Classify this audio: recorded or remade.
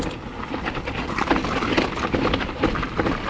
recorded